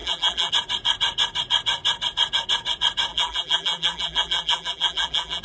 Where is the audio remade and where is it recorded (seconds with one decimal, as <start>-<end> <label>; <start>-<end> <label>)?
0.0-0.5 remade; 0.5-3.1 recorded; 3.1-5.4 remade